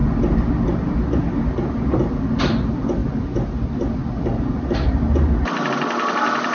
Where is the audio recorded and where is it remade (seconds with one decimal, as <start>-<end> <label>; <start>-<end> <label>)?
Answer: 0.0-6.5 recorded